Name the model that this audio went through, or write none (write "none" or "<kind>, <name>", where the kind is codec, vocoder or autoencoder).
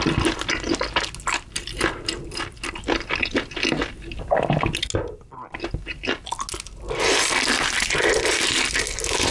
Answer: none